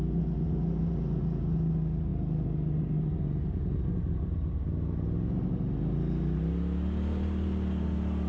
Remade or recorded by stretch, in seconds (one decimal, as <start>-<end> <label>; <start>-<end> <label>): 0.0-8.3 recorded

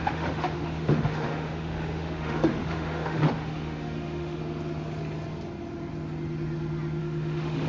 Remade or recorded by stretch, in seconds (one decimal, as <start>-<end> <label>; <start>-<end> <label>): 0.0-4.4 remade; 4.4-7.0 recorded; 7.0-7.7 remade

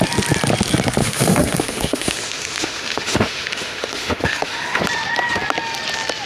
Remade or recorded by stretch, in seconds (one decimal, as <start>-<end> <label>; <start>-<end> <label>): 0.0-1.0 recorded; 1.0-4.8 remade; 4.8-6.3 recorded